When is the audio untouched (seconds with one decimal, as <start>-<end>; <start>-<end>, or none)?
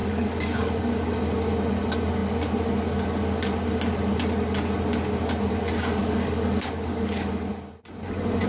0.8-6.0; 7.5-8.5